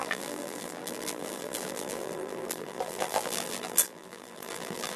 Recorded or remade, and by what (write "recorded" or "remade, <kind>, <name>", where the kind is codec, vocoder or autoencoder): remade, vocoder, BigVGAN v2